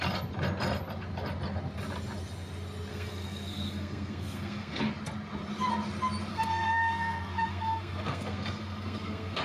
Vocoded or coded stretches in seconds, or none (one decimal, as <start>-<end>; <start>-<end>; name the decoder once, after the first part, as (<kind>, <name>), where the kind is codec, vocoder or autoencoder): 2.9-4.8 (codec, SNAC); 6.3-9.4